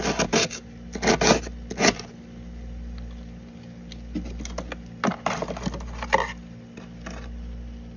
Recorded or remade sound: recorded